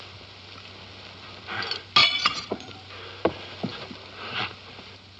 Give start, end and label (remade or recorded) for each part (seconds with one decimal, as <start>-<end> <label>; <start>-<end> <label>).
0.0-2.0 recorded; 2.0-2.7 remade; 2.7-5.2 recorded